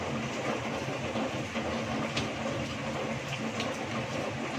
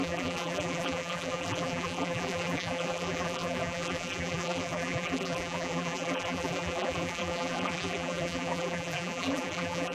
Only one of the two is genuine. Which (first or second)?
first